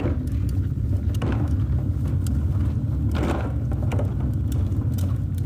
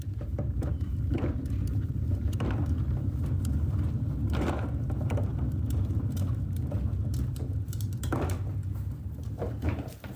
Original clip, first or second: first